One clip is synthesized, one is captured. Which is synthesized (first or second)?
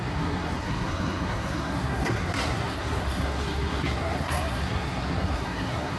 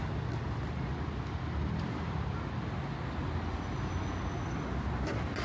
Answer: first